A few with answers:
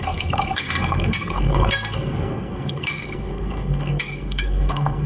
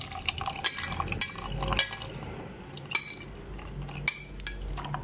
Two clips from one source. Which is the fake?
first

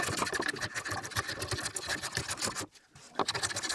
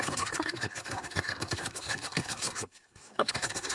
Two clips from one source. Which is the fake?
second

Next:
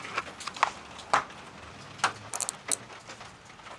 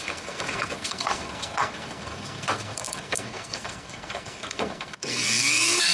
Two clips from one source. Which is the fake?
second